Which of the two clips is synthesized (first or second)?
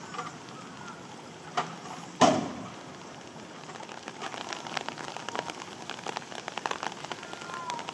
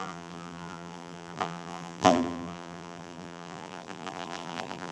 second